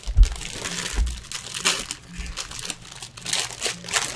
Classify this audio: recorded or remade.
recorded